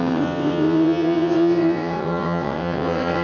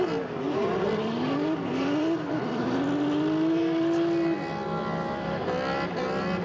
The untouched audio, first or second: second